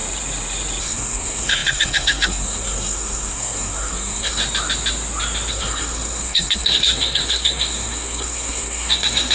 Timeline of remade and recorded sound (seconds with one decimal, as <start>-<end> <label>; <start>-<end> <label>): 0.0-0.8 recorded; 0.8-4.4 remade; 4.4-5.5 recorded; 5.5-9.3 remade